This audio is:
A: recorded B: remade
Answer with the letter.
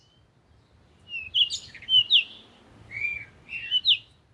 A